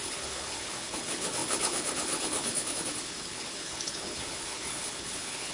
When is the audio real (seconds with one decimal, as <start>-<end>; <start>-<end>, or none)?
none